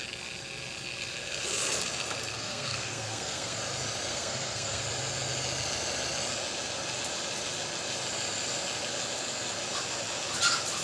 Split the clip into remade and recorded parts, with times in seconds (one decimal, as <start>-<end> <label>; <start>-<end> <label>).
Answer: 0.0-2.3 recorded; 2.3-3.6 remade; 3.6-4.1 recorded; 4.1-4.8 remade; 4.8-10.8 recorded